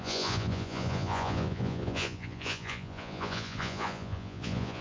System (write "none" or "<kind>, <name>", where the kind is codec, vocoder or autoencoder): vocoder, Vocos